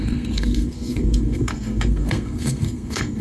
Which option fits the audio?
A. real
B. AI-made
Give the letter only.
B